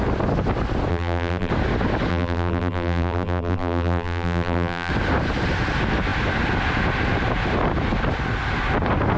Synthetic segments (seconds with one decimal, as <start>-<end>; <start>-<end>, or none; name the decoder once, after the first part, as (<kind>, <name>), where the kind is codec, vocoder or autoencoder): 0.9-1.5 (vocoder, BigVGAN v2); 2.1-4.9